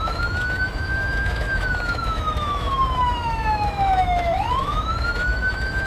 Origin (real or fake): fake